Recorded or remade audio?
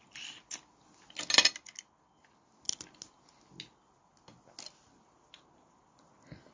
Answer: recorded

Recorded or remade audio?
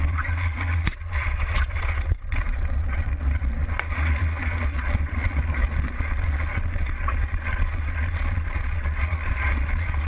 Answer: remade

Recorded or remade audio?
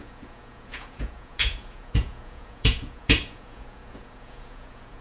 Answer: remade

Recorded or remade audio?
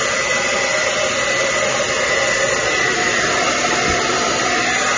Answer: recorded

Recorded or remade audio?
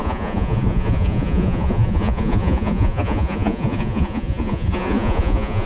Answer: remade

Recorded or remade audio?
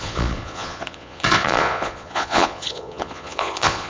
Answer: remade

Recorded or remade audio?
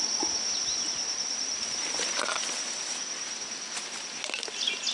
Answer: recorded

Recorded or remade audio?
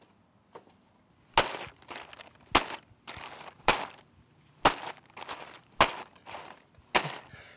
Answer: recorded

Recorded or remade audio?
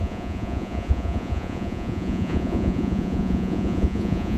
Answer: remade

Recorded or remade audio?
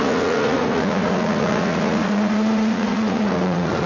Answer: remade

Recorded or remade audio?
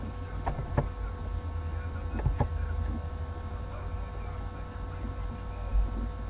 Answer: recorded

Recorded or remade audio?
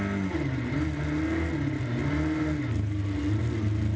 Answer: recorded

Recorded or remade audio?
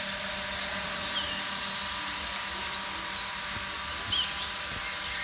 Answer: recorded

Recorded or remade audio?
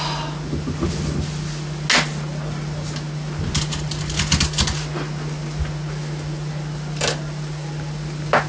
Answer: recorded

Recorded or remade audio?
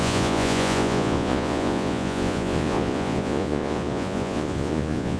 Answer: remade